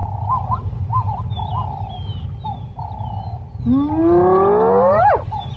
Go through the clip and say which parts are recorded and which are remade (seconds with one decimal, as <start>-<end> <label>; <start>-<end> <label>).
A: 0.0-5.6 recorded